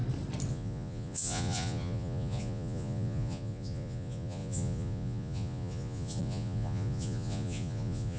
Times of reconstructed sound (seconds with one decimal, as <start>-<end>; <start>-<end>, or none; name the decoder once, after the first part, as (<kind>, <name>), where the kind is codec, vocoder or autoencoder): 0.5-8.2 (vocoder, Vocos)